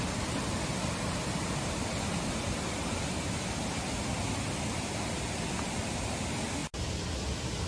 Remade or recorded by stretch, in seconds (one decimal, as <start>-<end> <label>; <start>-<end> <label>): 0.0-7.7 recorded